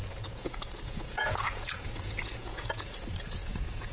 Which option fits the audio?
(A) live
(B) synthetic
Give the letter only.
B